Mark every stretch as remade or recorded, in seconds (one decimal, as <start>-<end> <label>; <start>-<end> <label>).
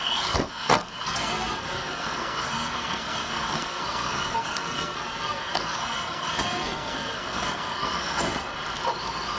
0.0-8.5 remade; 8.5-9.4 recorded